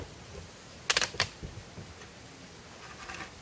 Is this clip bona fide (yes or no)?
yes